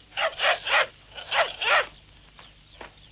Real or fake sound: real